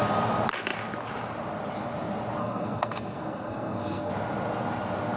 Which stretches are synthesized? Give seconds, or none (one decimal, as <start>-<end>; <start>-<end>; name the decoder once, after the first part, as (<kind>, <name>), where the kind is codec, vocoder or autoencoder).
2.4-4.1 (codec, SNAC)